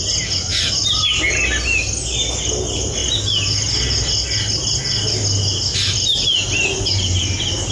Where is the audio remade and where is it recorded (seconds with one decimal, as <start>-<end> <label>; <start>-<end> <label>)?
0.0-7.7 recorded